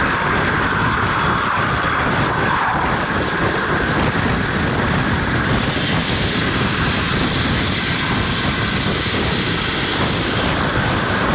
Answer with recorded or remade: recorded